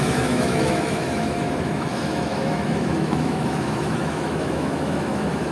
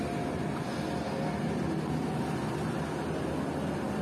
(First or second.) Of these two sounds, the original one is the second